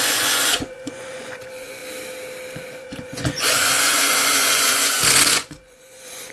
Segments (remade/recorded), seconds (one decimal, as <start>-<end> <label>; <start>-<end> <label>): 0.0-1.8 remade; 1.8-2.5 recorded; 2.5-6.3 remade

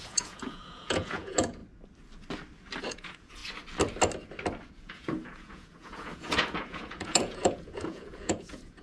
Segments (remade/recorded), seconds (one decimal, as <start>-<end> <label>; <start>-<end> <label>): 0.0-1.6 remade; 1.6-2.8 recorded; 2.8-3.4 remade; 3.4-4.8 recorded; 4.8-8.8 remade

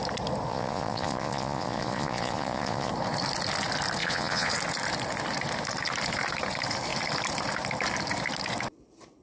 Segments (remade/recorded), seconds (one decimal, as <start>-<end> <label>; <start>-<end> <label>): 0.0-0.5 recorded; 0.5-2.9 remade; 2.9-4.0 recorded; 4.0-4.5 remade; 4.5-9.2 recorded

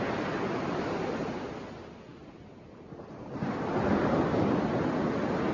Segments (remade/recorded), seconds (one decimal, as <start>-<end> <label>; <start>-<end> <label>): 0.0-5.5 recorded